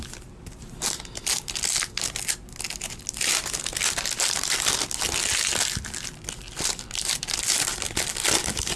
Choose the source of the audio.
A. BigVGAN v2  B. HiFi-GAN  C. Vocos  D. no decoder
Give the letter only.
D